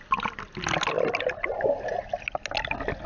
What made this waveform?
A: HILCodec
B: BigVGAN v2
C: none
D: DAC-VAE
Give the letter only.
C